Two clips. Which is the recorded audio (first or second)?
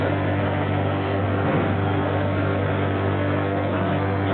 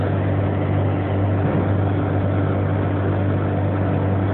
second